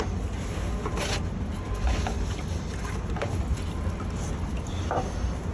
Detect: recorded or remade recorded